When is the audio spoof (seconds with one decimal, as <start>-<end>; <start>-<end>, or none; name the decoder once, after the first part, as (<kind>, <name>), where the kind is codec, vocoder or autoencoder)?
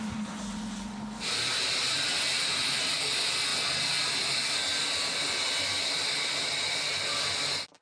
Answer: none